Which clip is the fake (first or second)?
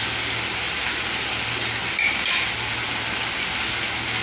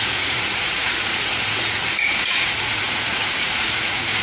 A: second